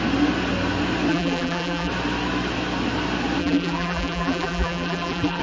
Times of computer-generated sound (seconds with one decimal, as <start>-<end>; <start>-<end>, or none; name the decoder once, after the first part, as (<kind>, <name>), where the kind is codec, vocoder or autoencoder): 1.1-1.9 (vocoder, BigVGAN v2); 3.4-5.4